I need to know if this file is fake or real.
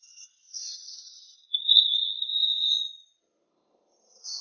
real